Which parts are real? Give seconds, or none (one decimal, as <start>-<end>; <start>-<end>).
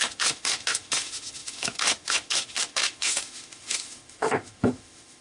none